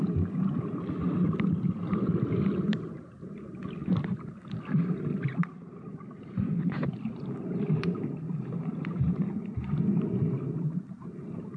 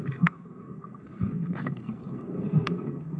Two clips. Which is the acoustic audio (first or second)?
first